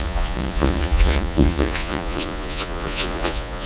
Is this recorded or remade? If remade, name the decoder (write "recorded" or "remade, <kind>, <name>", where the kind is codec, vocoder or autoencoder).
remade, vocoder, Vocos